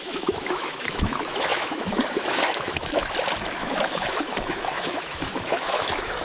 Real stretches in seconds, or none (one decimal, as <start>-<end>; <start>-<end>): 3.0-3.6